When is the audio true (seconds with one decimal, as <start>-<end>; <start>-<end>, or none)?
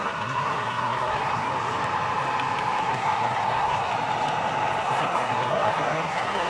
1.5-2.8; 3.9-4.8